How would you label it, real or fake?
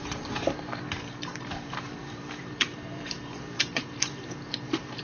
fake